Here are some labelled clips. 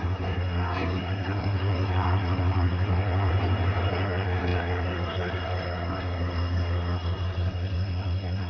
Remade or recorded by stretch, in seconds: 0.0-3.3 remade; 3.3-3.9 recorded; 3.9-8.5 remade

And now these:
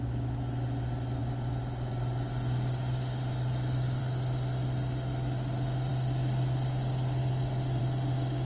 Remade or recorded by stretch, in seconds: 0.0-8.4 recorded